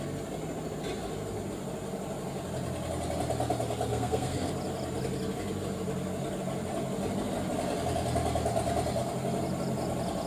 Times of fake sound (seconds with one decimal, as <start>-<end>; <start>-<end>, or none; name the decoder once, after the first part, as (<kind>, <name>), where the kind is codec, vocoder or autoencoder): 3.9-4.5 (codec, SNAC)